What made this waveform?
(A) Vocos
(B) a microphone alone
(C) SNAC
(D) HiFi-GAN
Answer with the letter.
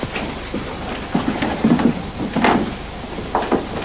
B